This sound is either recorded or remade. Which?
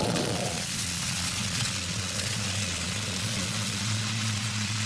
remade